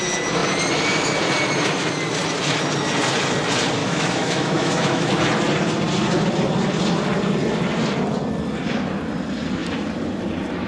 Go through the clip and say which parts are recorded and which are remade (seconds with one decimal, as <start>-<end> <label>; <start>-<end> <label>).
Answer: 0.0-3.8 recorded; 3.8-5.1 remade; 5.1-10.7 recorded